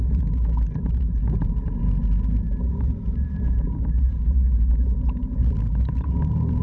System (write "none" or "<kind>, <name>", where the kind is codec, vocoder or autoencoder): vocoder, BigVGAN v2